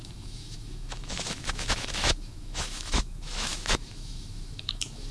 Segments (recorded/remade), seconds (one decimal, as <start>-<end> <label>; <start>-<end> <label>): 0.0-5.1 remade